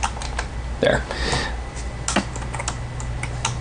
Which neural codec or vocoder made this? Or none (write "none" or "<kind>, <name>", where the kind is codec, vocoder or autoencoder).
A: none